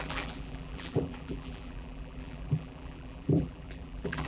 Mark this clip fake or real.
fake